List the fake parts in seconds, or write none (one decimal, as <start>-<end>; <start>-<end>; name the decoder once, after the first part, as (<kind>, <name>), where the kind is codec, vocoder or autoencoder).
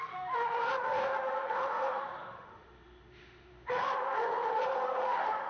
0.0-5.5 (autoencoder, DAC-VAE)